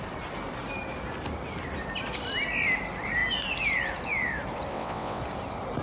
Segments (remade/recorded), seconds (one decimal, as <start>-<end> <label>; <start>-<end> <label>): 0.0-4.7 recorded; 4.7-5.2 remade; 5.2-5.8 recorded